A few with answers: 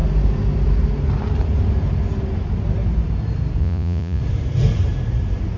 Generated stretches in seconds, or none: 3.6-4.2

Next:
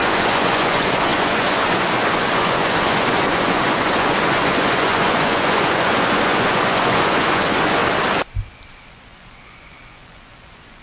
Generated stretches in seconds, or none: 0.0-7.8; 8.9-10.8

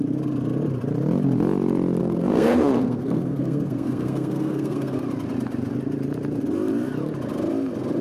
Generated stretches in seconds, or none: 2.0-5.0

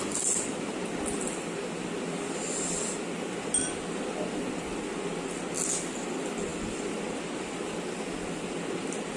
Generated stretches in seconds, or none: none

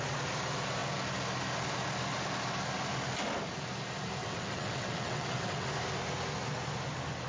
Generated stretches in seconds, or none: 4.2-5.7

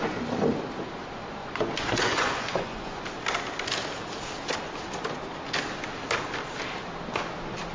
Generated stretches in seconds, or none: 1.4-3.0

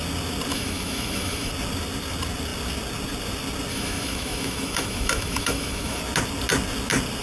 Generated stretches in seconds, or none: 0.5-1.5; 3.7-6.0

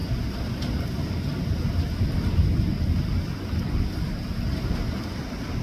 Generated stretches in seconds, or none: none